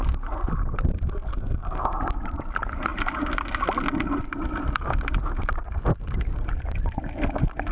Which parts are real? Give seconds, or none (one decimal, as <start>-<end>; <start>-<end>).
0.0-1.3; 2.0-7.7